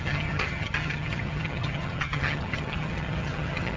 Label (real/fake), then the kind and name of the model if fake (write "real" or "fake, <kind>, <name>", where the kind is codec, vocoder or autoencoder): fake, vocoder, HiFi-GAN